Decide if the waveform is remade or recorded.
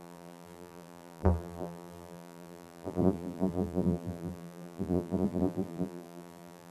remade